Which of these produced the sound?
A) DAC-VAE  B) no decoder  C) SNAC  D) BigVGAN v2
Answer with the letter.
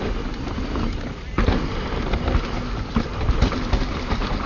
B